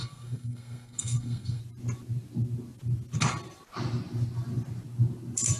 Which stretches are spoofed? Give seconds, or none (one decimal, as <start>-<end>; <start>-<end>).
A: 0.0-1.6